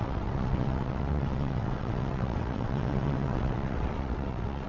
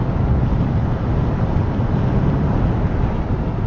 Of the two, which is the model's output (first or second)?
first